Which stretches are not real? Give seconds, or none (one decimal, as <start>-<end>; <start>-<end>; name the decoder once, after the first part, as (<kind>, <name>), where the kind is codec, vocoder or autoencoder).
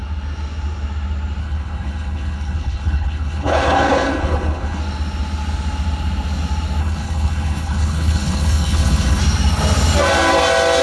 1.4-4.8 (codec, HILCodec); 6.8-9.2